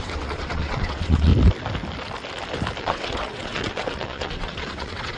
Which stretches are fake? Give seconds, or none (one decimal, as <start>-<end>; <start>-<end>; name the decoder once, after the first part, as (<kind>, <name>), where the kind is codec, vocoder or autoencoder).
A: 0.0-1.3 (vocoder, WaveNeXt); 2.8-5.2